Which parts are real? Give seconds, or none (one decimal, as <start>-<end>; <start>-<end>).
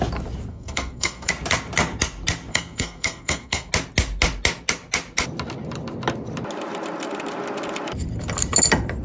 0.0-0.5; 1.3-2.5; 3.7-9.0